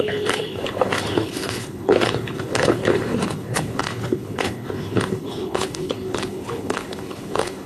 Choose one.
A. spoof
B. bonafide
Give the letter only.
A